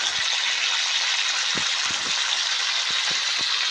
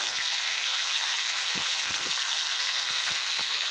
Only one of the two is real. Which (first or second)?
first